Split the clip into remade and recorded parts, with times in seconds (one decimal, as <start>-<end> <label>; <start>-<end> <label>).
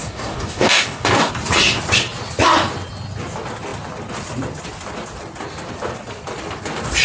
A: 0.0-1.3 remade; 1.3-7.0 recorded